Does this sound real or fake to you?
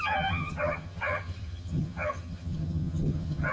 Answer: fake